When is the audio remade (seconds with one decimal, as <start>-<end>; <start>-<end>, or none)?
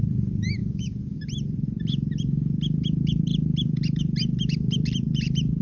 0.6-1.2